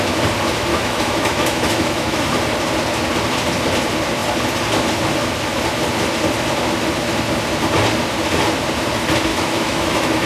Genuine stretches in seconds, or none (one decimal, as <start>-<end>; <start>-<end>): 0.0-0.7; 2.3-9.3

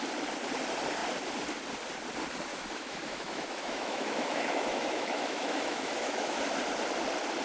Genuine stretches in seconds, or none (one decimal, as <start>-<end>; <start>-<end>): 0.0-2.5; 6.4-7.4